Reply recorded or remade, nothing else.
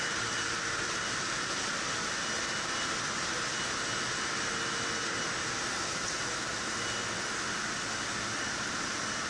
recorded